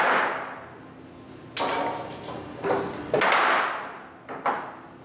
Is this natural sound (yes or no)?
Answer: yes